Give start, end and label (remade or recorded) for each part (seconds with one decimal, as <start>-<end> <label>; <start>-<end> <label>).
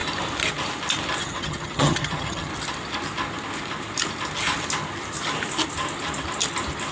0.0-1.2 recorded; 1.2-2.5 remade; 2.5-6.9 recorded